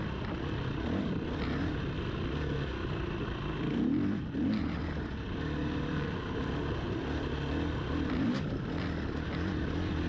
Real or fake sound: real